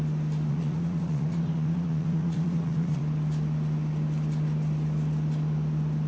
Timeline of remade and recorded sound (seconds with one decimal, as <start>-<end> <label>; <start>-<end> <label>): 0.0-0.5 recorded; 0.5-3.0 remade; 3.0-6.1 recorded